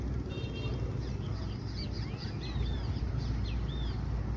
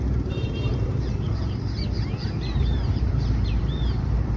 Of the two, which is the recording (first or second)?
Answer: first